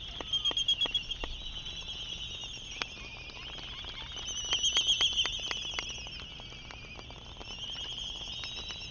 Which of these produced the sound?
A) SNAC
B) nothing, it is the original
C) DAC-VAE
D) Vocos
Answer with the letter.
B